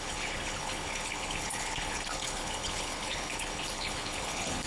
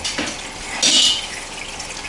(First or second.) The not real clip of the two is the first